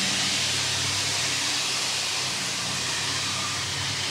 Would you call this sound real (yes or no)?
no